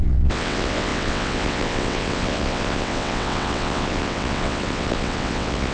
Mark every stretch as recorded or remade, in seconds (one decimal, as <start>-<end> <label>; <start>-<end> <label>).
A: 0.0-5.7 remade